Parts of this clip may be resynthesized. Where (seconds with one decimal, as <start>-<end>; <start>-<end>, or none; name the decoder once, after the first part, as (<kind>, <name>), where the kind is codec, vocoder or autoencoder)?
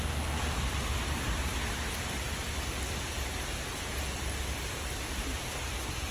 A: none